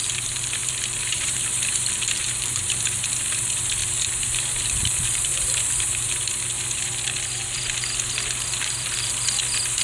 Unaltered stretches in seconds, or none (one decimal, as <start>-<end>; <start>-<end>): 0.0-0.6; 2.8-3.8; 6.1-9.8